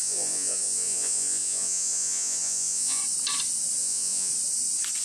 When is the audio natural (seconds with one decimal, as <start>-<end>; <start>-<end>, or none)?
3.0-3.8; 4.3-5.0